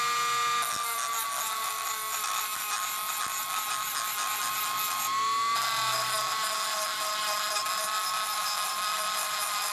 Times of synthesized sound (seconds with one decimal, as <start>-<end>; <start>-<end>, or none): none